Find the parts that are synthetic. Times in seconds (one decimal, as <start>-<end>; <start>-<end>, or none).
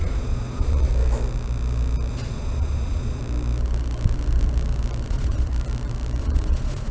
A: 0.0-0.9; 2.1-3.2; 5.1-5.5; 6.2-6.9